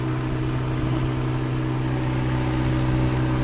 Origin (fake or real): real